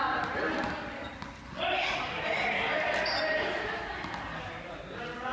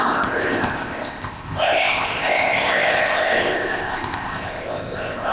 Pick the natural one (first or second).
first